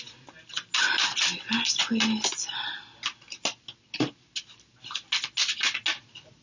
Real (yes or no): yes